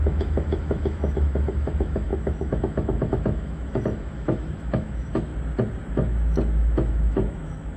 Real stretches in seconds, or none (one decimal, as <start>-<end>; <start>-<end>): 5.3-5.9